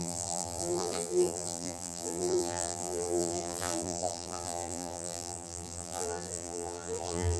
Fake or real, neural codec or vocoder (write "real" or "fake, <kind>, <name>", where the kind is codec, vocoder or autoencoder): fake, vocoder, BigVGAN v2